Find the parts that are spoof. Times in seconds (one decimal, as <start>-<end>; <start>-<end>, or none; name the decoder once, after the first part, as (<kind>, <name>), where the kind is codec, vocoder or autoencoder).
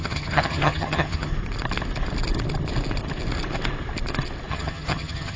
0.0-1.3 (vocoder, HiFi-GAN); 4.5-5.4